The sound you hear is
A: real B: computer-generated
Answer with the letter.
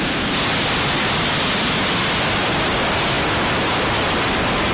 A